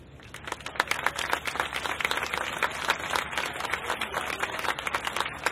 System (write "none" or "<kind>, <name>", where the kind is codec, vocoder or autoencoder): none